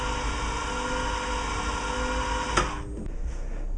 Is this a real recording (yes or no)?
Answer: yes